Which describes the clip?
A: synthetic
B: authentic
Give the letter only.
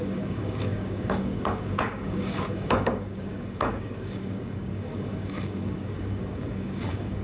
A